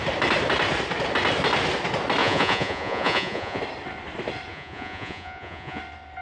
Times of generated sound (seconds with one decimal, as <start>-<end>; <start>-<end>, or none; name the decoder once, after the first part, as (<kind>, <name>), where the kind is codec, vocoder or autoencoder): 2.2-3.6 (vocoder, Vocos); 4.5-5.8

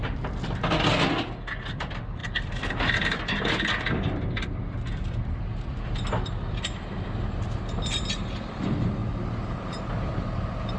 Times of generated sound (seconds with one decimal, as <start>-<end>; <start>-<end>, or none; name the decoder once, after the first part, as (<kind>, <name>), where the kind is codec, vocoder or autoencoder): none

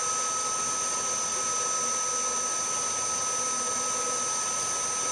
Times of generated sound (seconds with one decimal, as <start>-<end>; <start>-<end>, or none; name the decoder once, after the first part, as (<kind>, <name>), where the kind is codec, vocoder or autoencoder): none

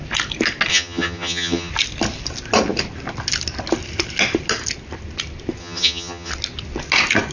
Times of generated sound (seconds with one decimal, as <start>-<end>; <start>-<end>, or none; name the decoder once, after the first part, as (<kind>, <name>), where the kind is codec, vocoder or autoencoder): 0.7-1.7 (vocoder, HiFi-GAN); 5.6-6.3